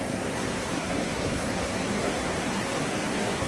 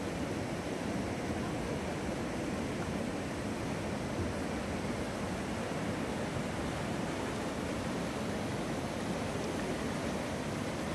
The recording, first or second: second